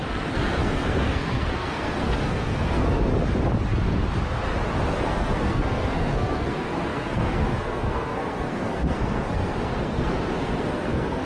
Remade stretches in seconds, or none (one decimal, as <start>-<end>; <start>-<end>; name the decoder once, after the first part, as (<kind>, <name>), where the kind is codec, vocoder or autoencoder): 0.0-3.1 (codec, SNAC); 4.9-11.3